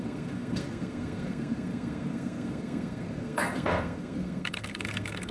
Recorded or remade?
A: remade